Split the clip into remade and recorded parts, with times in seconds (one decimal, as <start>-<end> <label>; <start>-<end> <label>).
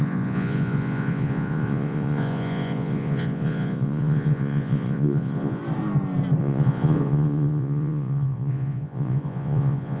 0.0-5.6 remade; 5.6-6.4 recorded; 6.4-10.0 remade